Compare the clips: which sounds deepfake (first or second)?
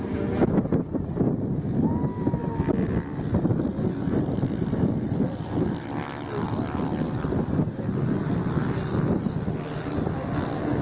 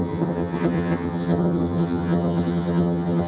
second